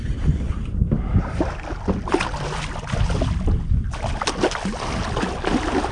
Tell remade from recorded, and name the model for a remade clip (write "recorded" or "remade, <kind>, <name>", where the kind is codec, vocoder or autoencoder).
recorded